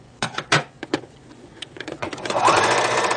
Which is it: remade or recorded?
remade